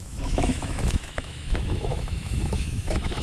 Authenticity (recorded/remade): remade